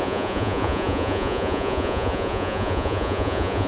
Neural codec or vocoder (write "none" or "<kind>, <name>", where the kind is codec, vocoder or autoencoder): vocoder, Vocos